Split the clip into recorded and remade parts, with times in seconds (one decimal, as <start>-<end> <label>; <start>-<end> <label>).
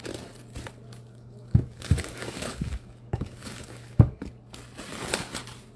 0.0-1.1 recorded; 1.1-4.3 remade; 4.3-5.8 recorded